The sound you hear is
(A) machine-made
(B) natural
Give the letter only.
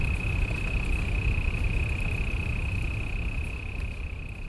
B